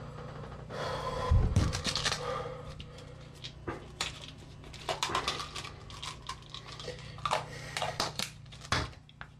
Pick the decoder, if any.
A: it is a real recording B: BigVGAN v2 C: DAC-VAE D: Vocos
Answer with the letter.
A